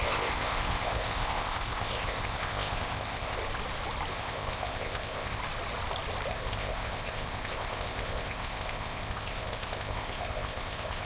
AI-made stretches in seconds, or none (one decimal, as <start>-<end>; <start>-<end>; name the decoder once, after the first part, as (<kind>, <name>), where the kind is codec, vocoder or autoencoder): 0.0-3.4 (codec, ZipCodec); 4.1-5.4; 6.3-11.1